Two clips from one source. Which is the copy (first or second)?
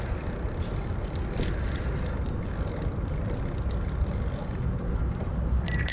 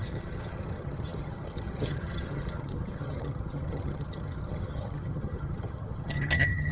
second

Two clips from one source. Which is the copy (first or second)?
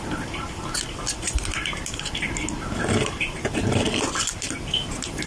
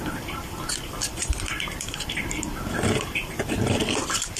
second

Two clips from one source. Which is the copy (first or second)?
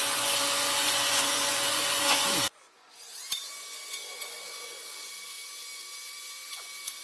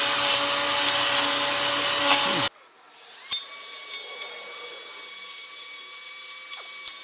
first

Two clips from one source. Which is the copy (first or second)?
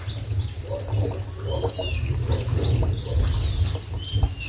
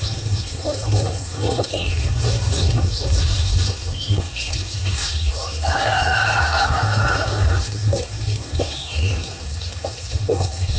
second